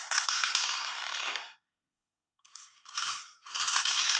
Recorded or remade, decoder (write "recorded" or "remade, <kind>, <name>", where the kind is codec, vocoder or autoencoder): remade, codec, SNAC